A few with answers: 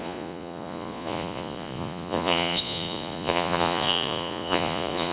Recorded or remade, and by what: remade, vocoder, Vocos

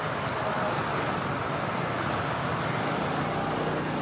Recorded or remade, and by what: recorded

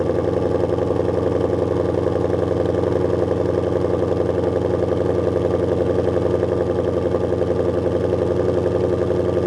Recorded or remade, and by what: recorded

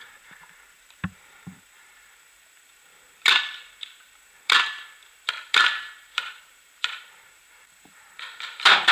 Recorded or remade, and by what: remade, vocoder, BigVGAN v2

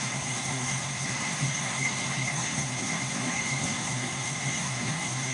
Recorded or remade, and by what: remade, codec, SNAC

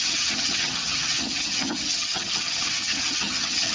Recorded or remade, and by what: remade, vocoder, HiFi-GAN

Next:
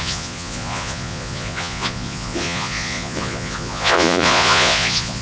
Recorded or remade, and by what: remade, vocoder, Vocos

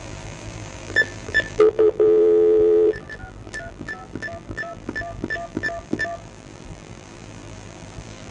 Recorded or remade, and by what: remade, vocoder, BigVGAN v2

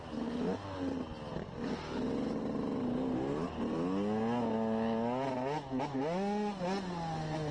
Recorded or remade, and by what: recorded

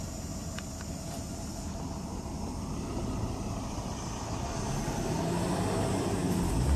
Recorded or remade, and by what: recorded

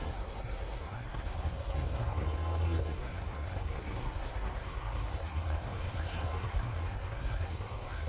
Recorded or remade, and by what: remade, codec, SNAC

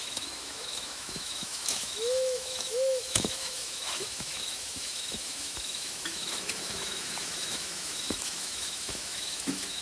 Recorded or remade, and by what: remade, autoencoder, DAC-VAE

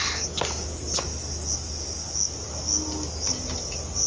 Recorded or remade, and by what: recorded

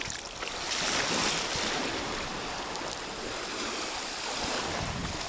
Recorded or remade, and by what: recorded